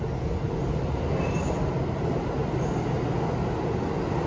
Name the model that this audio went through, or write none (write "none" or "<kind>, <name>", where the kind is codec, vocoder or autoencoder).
none